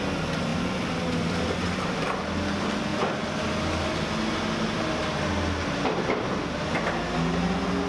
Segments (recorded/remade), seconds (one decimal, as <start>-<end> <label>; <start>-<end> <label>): 0.0-0.5 recorded; 0.5-1.9 remade; 1.9-2.9 recorded; 2.9-3.4 remade; 3.4-7.9 recorded